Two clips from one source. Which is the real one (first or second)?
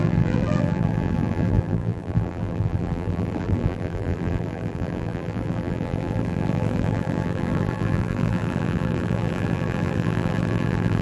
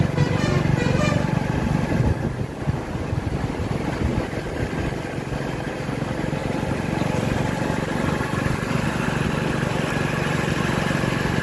second